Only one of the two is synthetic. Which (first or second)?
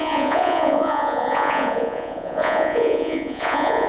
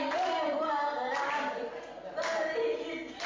first